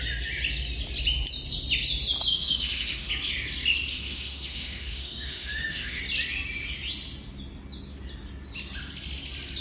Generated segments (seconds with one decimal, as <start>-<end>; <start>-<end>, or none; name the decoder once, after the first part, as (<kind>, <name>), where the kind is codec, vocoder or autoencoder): 2.3-3.1 (autoencoder, DAC-VAE); 3.9-6.0